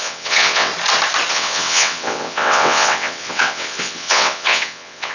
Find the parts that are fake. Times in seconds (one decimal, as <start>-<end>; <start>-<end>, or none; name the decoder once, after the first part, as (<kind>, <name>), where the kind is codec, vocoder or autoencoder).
0.0-0.7 (vocoder, WaveNeXt); 1.3-5.1